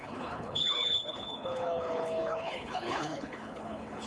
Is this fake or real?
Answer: fake